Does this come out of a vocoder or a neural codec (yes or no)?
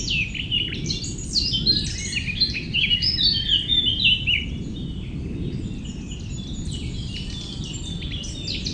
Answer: no